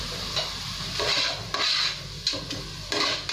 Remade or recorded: recorded